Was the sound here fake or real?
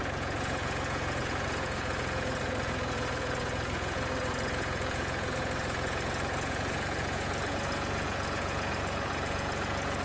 fake